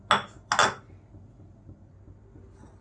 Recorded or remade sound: recorded